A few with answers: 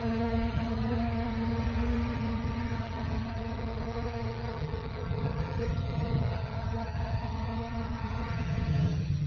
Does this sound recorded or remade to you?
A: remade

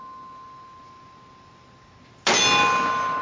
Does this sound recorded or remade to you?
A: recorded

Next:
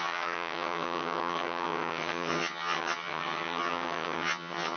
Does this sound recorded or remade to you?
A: remade